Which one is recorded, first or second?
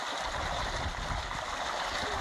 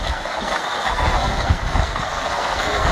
first